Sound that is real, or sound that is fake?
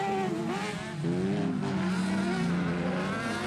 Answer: real